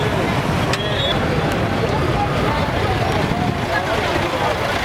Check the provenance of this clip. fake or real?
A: real